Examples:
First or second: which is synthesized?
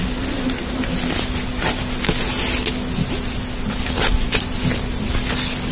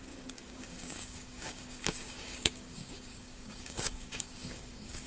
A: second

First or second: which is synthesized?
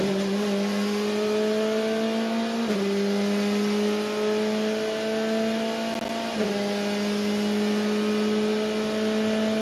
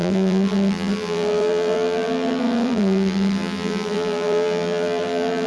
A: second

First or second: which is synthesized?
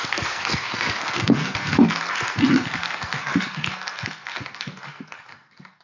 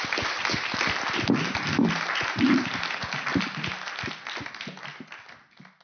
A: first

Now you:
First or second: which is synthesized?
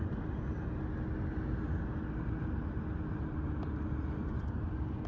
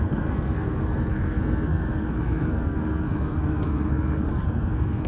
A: second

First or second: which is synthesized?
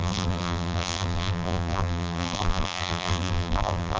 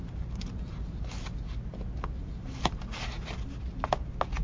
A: first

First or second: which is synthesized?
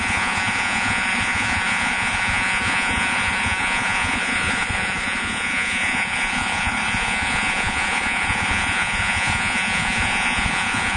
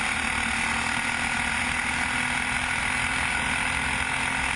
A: first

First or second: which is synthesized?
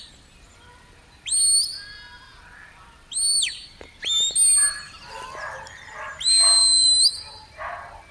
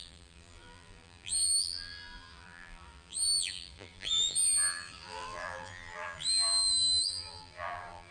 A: second